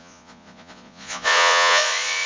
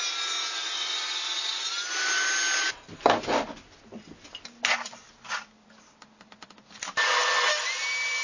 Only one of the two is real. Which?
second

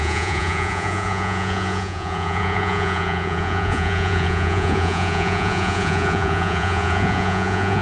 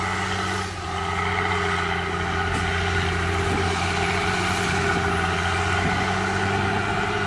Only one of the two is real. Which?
second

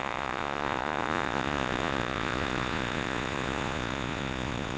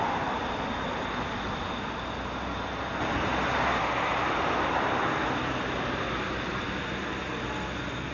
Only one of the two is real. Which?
second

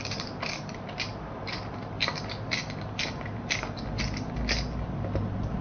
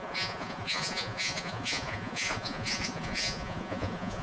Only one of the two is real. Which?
first